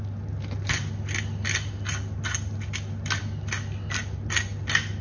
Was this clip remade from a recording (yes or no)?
no